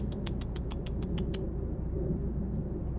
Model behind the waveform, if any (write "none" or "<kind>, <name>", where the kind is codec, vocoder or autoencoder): none